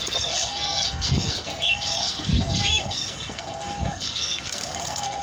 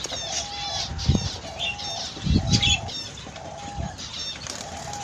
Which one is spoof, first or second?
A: first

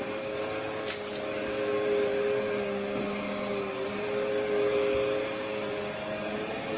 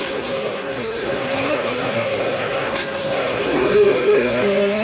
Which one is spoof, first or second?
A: second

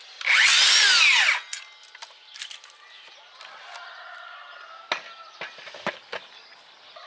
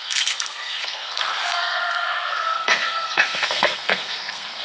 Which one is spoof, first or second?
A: second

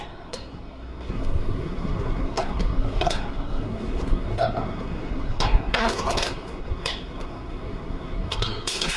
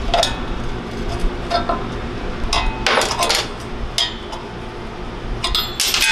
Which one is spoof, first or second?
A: first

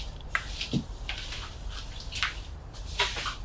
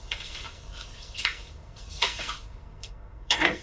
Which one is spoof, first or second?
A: second